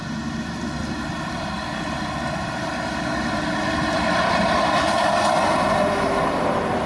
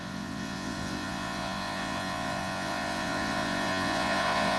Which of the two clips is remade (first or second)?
second